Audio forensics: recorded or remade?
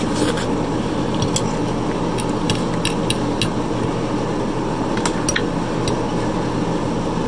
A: recorded